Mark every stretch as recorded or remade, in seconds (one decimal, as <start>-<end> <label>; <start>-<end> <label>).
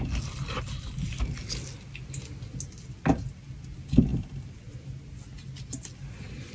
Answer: 0.0-6.5 recorded